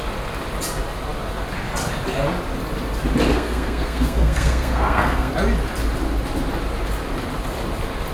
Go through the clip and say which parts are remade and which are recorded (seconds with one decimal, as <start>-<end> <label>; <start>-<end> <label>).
0.0-3.3 recorded; 3.3-5.3 remade; 5.3-8.1 recorded